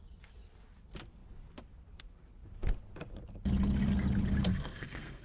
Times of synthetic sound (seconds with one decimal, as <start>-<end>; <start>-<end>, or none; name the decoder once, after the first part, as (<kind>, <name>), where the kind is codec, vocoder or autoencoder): 4.5-5.2 (codec, SNAC)